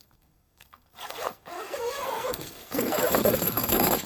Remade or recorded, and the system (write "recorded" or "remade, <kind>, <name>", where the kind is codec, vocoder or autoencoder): remade, codec, SNAC